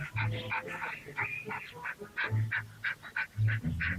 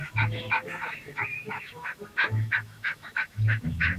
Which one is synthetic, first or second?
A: second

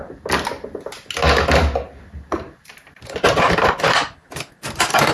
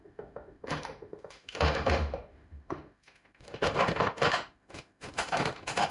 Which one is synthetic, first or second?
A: second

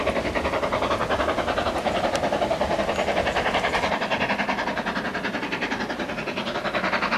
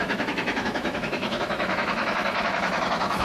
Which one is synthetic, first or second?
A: second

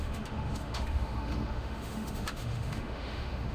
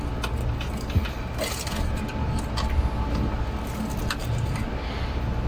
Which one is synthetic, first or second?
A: first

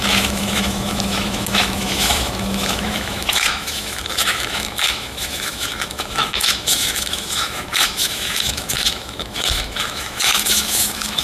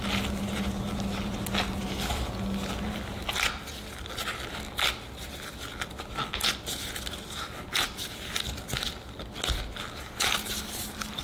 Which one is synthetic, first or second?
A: first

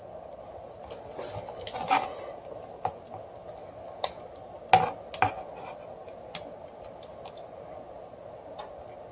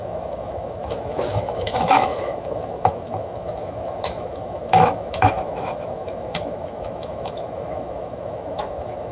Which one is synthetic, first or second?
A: second